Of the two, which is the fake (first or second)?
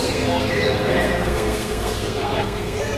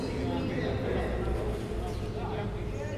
first